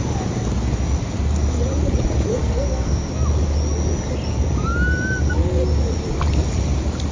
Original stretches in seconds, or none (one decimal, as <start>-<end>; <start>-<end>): 0.0-2.3; 3.1-7.1